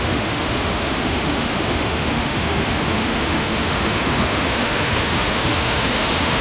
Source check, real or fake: fake